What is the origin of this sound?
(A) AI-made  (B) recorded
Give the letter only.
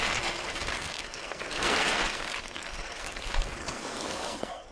A